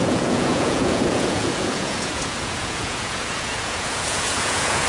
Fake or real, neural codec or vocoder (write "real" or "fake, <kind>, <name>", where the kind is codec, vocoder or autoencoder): fake, vocoder, Vocos